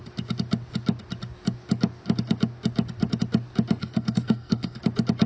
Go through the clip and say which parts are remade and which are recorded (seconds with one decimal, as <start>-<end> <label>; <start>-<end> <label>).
0.0-3.8 recorded; 3.8-4.8 remade; 4.8-5.3 recorded